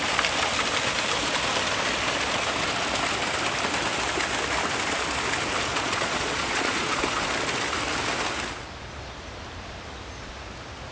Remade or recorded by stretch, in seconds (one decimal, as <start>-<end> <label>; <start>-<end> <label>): 0.0-5.7 recorded; 5.7-7.0 remade; 7.0-10.9 recorded